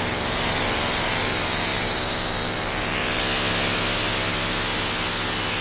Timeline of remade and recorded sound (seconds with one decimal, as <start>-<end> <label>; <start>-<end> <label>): 0.0-3.2 remade; 3.2-5.6 recorded